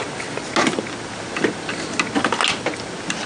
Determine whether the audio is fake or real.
real